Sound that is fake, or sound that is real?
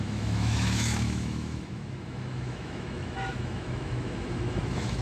fake